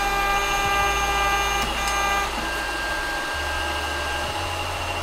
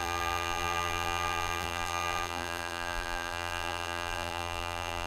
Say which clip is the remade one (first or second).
second